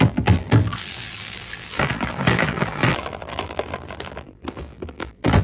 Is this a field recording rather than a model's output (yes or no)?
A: no